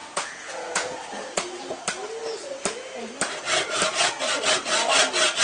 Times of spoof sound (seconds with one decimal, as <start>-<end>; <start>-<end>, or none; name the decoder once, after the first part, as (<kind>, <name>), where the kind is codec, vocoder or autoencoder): 0.0-1.8 (vocoder, Vocos)